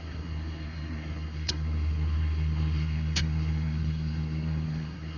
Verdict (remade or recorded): remade